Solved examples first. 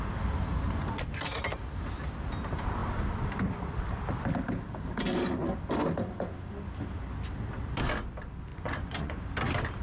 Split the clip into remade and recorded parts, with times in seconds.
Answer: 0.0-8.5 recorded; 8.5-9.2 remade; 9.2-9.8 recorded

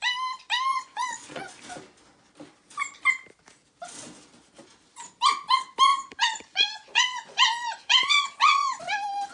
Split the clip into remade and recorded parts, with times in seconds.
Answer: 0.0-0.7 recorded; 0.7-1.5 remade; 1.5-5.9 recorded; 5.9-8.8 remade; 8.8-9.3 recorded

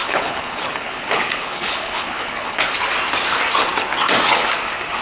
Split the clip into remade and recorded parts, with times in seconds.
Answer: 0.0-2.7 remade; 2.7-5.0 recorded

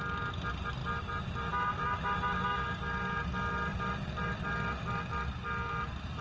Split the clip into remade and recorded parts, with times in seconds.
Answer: 0.0-0.8 recorded; 0.8-1.5 remade; 1.5-3.7 recorded; 3.7-4.4 remade; 4.4-6.2 recorded

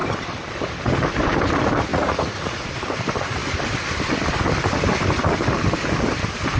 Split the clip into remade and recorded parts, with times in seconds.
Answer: 0.0-1.9 recorded; 1.9-2.7 remade; 2.7-6.6 recorded

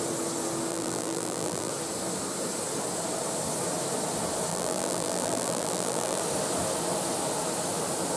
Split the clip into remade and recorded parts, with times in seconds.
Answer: 0.0-0.7 recorded; 0.7-1.7 remade; 1.7-4.5 recorded; 4.5-6.2 remade; 6.2-8.2 recorded

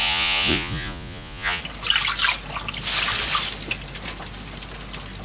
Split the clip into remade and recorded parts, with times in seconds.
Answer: 0.0-1.6 remade; 1.6-5.2 recorded